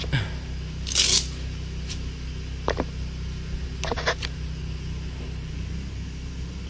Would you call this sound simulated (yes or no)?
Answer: no